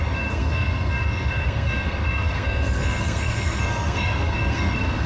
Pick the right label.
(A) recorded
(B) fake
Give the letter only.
B